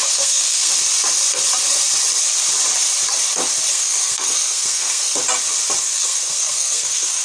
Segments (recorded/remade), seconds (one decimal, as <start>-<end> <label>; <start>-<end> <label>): 0.0-0.7 remade; 0.7-3.7 recorded; 3.7-5.2 remade; 5.2-5.8 recorded; 5.8-7.2 remade